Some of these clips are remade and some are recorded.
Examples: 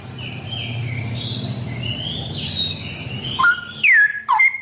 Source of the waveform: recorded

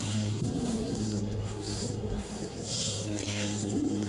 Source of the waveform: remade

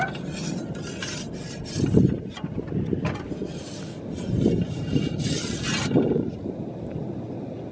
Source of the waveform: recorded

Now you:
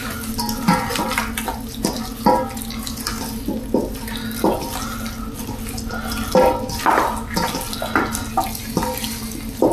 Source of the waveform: recorded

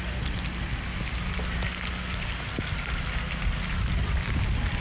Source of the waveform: recorded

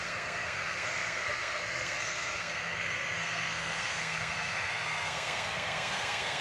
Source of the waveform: remade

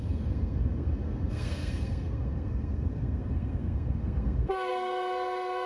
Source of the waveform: remade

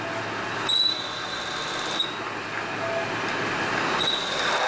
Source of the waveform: recorded